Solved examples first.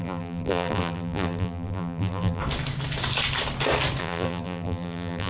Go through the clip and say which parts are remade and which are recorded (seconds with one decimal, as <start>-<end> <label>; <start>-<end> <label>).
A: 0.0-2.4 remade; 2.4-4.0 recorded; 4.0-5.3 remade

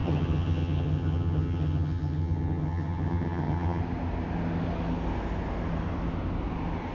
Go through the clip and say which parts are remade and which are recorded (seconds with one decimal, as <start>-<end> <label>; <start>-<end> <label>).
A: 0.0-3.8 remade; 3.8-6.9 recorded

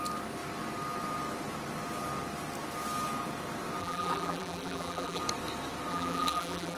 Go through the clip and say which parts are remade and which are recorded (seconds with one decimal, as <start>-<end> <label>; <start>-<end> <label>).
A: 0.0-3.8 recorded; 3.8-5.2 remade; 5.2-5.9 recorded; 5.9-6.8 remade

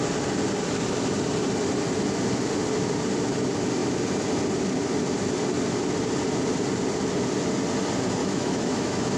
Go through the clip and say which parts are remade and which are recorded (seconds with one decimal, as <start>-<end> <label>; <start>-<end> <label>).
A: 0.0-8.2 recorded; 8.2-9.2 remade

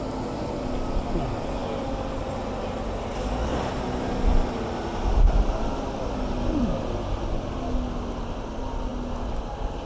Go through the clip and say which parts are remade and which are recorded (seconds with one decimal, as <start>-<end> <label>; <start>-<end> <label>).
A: 0.0-9.9 recorded

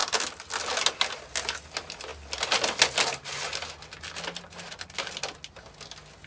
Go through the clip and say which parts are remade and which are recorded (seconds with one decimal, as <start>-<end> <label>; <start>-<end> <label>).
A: 0.0-6.3 recorded

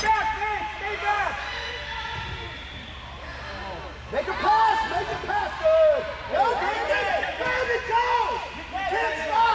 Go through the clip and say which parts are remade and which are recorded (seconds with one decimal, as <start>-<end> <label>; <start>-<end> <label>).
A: 0.0-1.1 recorded; 1.1-1.7 remade; 1.7-9.5 recorded